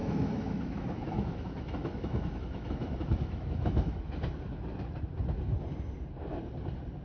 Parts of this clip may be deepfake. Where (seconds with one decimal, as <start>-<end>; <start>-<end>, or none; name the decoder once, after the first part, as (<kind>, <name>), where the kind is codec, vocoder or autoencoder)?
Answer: 0.0-4.1 (autoencoder, DAC-VAE)